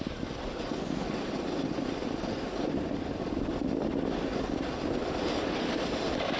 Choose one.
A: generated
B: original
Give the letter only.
B